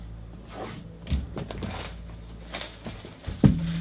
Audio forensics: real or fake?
real